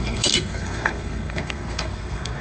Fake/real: fake